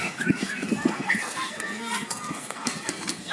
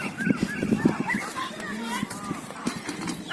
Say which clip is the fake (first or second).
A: first